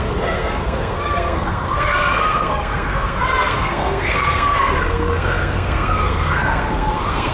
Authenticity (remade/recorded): remade